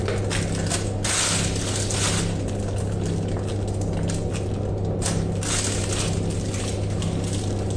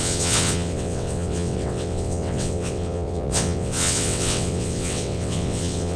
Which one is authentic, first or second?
first